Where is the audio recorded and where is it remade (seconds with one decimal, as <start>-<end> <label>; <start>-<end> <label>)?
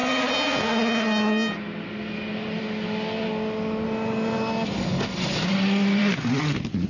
0.0-6.9 recorded